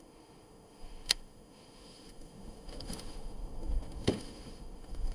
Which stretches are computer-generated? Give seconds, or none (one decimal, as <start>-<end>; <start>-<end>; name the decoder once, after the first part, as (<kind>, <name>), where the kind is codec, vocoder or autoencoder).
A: 0.0-5.1 (autoencoder, DAC-VAE)